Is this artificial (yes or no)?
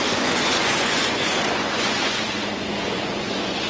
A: yes